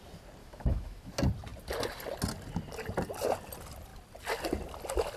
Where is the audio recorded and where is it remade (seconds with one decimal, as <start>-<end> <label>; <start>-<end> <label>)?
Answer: 0.0-0.4 recorded; 0.4-1.1 remade; 1.1-5.2 recorded